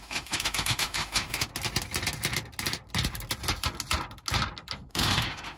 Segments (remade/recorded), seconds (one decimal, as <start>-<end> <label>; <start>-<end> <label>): 0.0-1.5 remade; 1.5-4.9 recorded; 4.9-5.6 remade